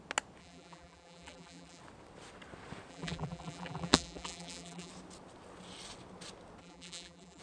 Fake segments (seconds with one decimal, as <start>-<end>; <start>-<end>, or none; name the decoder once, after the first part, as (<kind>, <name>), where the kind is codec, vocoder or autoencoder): 0.4-1.8 (vocoder, BigVGAN v2); 2.9-4.9; 6.6-7.4